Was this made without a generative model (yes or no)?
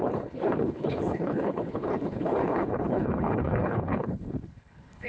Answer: no